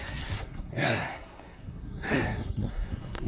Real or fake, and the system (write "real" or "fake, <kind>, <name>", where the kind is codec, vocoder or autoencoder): fake, codec, SNAC